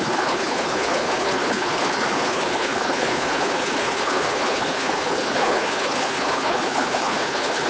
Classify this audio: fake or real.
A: fake